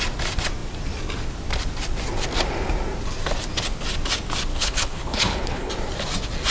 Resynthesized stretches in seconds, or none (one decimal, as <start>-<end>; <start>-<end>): 4.5-5.7